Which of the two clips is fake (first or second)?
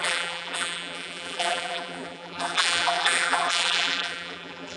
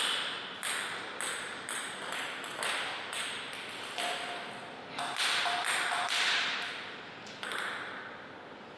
first